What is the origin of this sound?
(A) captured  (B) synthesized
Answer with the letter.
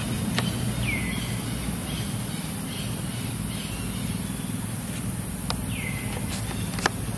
A